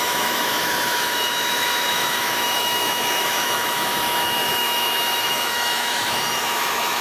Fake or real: fake